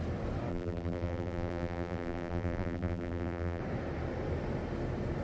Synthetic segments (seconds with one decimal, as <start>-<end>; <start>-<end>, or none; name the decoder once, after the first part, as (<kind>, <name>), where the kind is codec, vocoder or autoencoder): 0.5-3.6 (vocoder, BigVGAN v2)